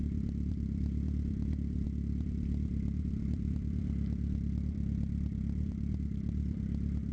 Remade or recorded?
remade